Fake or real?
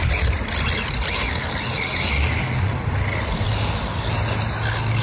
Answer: real